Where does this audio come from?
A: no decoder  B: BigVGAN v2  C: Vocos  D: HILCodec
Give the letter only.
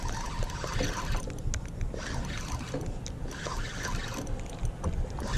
A